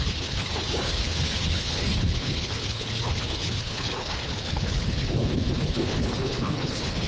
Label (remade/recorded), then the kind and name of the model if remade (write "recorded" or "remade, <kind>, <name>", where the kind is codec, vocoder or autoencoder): remade, codec, HILCodec